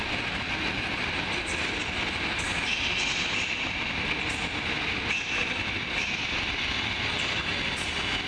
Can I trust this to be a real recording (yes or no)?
yes